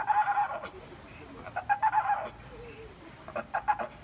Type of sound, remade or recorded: recorded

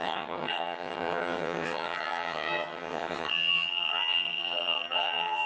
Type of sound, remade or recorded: remade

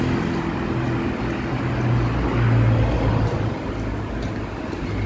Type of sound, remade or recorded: recorded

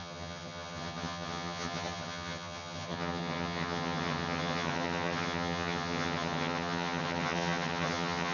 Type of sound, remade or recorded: remade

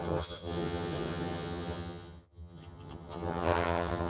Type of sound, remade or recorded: remade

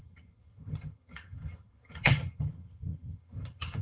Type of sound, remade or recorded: remade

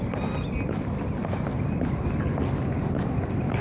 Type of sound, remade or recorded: recorded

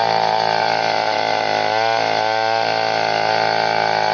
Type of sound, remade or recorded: recorded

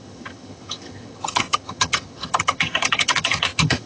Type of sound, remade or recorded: remade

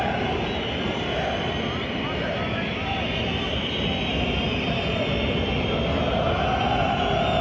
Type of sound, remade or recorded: recorded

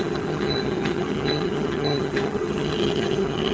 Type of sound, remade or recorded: remade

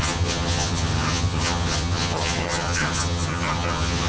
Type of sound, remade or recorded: remade